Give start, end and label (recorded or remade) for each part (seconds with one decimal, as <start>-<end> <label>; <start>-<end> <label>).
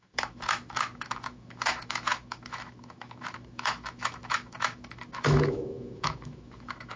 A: 0.0-7.0 remade